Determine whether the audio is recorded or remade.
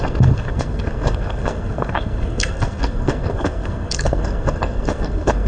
remade